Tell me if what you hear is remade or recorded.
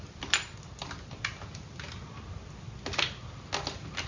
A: recorded